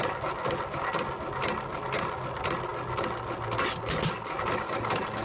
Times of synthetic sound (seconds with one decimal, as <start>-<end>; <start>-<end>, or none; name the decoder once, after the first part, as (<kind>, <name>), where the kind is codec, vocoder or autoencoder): none